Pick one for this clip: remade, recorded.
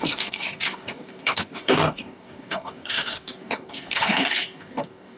remade